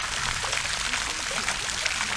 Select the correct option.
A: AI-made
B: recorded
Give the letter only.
B